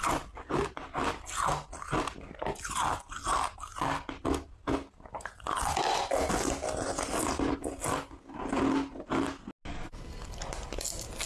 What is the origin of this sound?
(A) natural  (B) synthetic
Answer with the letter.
A